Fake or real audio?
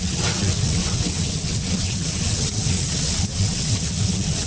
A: fake